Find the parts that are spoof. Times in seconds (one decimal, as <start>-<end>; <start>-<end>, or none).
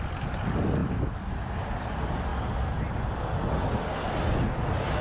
none